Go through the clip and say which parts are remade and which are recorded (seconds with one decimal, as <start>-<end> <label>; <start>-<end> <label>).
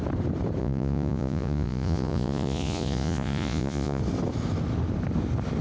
0.0-0.6 recorded; 0.6-4.0 remade; 4.0-5.6 recorded